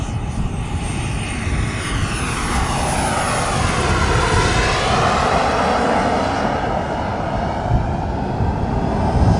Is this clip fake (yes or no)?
no